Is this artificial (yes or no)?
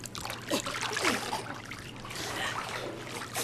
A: yes